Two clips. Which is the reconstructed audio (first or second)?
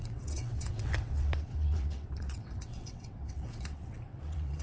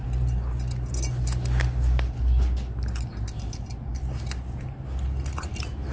first